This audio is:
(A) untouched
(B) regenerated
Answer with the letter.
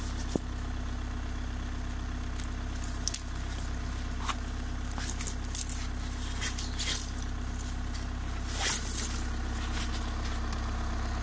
A